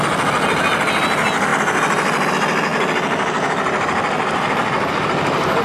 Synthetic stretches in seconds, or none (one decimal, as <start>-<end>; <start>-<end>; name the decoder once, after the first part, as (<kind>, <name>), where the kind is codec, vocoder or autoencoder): none